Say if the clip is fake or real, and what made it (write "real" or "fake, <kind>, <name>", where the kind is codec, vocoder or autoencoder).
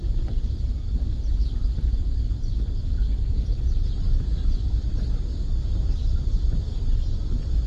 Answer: real